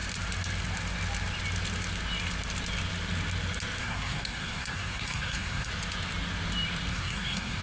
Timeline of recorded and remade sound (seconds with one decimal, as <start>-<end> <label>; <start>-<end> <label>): 0.0-3.8 recorded; 3.8-5.7 remade; 5.7-6.9 recorded; 6.9-7.6 remade